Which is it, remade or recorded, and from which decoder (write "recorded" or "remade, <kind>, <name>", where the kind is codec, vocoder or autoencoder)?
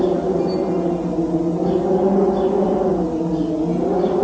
recorded